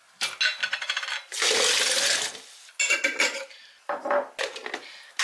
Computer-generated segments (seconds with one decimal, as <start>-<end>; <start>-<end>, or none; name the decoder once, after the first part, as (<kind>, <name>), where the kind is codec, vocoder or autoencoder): none